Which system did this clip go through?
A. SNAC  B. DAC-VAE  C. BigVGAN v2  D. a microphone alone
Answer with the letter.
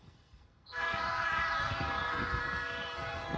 A